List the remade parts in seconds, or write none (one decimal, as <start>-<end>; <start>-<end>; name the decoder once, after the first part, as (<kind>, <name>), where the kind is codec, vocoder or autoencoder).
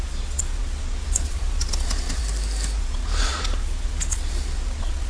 0.0-2.2 (vocoder, Vocos); 2.8-5.1